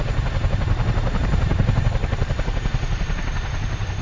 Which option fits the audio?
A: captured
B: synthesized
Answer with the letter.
B